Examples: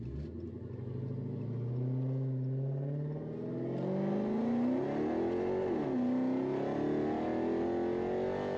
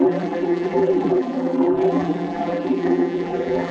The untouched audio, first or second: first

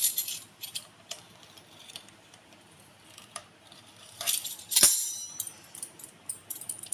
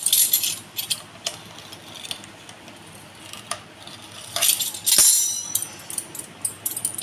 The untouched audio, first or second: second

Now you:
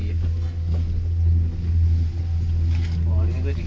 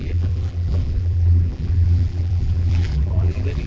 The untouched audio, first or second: first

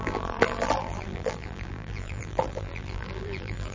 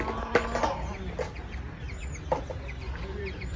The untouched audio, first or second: second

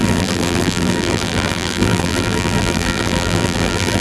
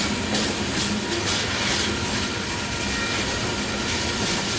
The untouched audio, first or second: second